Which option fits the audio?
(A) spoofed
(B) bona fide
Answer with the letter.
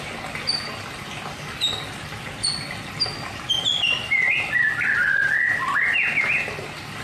B